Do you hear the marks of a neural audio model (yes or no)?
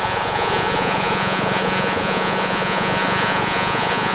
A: yes